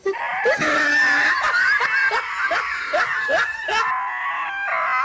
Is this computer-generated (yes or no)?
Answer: no